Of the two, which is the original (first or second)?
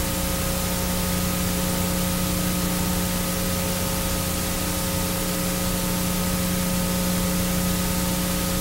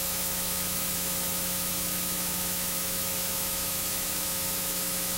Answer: first